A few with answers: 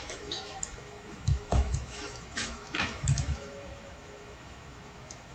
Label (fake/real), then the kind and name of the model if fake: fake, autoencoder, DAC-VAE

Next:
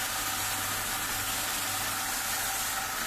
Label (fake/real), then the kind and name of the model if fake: real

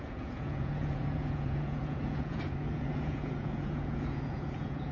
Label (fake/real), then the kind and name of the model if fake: fake, vocoder, Vocos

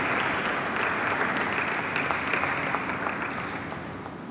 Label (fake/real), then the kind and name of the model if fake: real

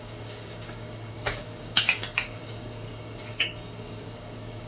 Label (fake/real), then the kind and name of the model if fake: fake, codec, DAC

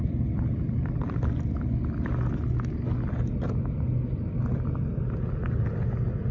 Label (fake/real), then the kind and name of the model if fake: real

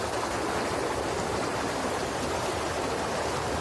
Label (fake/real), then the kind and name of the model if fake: real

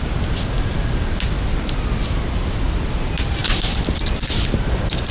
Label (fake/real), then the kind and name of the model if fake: real